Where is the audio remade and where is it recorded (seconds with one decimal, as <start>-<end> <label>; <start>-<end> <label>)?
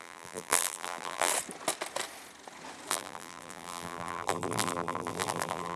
0.0-1.3 remade; 1.3-2.9 recorded; 2.9-5.8 remade